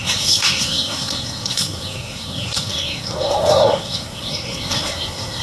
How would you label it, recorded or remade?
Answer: remade